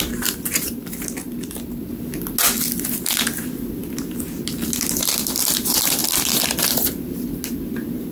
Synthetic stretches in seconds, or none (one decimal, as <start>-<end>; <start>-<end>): none